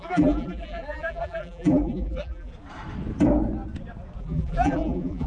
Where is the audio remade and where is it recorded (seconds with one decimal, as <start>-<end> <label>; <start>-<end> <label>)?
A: 0.0-2.5 remade; 2.5-4.2 recorded; 4.2-5.3 remade